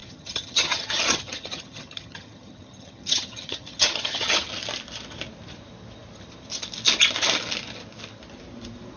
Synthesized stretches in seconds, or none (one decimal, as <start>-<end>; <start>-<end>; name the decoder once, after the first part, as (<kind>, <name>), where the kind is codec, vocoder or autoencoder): 0.0-4.5 (vocoder, HiFi-GAN)